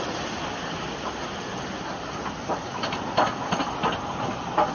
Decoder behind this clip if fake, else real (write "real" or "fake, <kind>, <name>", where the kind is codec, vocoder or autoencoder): real